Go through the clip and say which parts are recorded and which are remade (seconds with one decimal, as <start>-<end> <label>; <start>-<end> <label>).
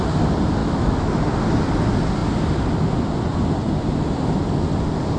0.0-0.6 recorded; 0.6-1.1 remade; 1.1-5.2 recorded